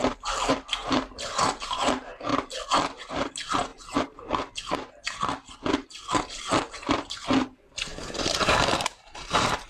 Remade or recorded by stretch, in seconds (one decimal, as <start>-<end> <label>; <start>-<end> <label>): 0.0-2.3 remade; 2.3-3.1 recorded; 3.1-3.7 remade; 3.7-6.2 recorded; 6.2-9.7 remade